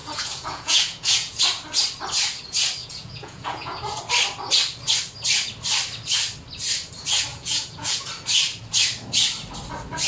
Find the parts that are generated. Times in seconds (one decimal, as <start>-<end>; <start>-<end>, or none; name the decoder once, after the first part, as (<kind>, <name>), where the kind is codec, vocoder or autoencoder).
0.0-1.4 (vocoder, Vocos); 2.8-4.0; 7.3-8.1